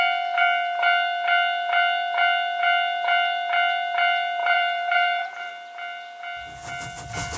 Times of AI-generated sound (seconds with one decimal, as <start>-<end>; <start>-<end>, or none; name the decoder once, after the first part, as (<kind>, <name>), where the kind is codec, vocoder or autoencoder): 4.4-5.5 (vocoder, BigVGAN v2)